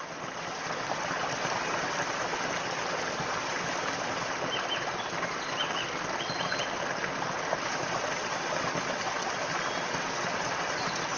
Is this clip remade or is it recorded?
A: recorded